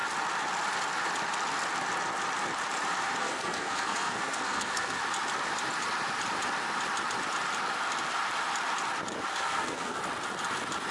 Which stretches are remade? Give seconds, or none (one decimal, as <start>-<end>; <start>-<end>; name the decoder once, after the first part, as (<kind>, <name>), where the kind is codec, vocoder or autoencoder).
3.2-5.0 (codec, SNAC); 9.3-10.0